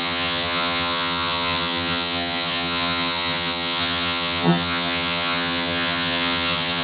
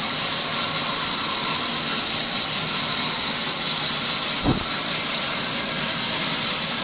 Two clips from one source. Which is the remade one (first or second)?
first